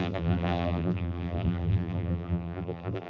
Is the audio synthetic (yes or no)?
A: yes